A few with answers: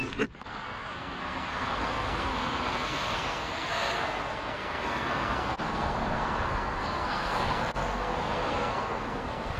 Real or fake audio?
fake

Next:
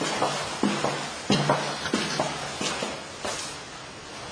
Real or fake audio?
real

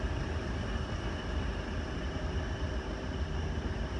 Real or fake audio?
real